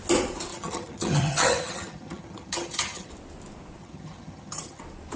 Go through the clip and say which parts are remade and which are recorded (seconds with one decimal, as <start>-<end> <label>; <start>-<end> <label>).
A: 0.0-0.5 recorded; 0.5-3.1 remade; 3.1-3.8 recorded; 3.8-4.8 remade; 4.8-5.2 recorded